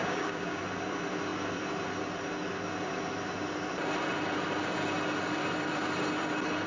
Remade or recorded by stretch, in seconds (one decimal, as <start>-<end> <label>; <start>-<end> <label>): 0.0-0.6 remade; 0.6-6.7 recorded